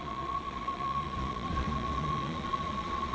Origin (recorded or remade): remade